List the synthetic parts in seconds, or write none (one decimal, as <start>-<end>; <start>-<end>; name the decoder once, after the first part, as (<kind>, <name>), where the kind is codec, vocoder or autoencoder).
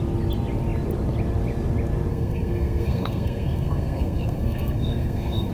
2.1-5.5 (codec, SNAC)